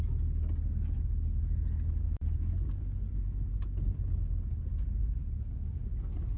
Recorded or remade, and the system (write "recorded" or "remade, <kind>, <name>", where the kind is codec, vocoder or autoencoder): recorded